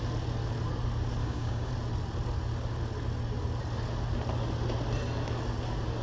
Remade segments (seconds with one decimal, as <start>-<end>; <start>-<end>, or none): 1.2-1.7